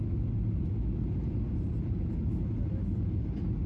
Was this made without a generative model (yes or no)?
yes